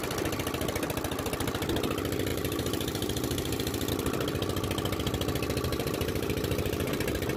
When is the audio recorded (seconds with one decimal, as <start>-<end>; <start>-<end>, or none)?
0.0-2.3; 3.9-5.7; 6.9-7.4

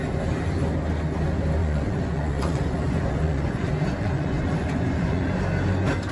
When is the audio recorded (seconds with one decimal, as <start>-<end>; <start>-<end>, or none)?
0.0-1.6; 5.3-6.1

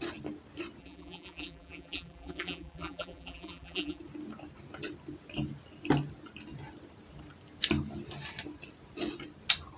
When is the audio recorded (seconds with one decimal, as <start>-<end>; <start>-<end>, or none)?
0.0-0.8; 4.0-9.8

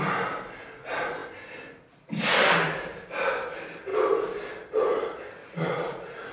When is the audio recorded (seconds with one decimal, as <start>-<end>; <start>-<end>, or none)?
0.0-5.4